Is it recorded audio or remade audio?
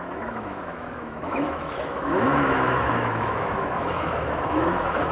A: remade